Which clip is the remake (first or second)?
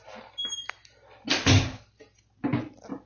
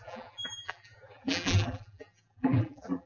second